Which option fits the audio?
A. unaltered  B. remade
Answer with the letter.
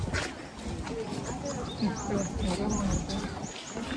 A